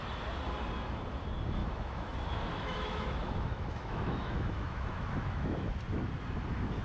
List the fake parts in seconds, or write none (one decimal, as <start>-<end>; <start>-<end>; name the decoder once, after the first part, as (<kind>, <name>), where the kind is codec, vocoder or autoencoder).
1.6-5.7 (autoencoder, DAC-VAE)